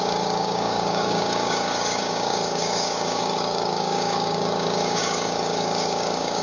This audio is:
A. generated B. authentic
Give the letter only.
A